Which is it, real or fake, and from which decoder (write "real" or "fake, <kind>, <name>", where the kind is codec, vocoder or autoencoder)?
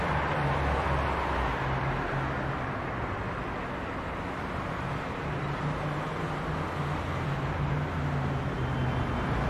real